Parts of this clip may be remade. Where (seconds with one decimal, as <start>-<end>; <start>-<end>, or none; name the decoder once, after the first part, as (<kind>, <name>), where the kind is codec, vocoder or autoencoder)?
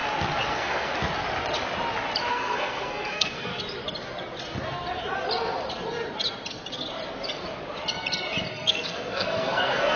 0.5-0.9 (codec, SNAC); 2.3-3.5; 8.5-10.0